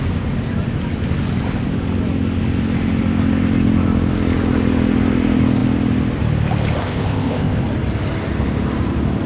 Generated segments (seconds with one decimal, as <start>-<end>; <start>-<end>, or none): 6.8-7.6